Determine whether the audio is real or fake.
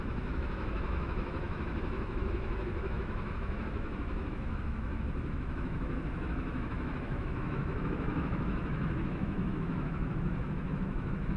fake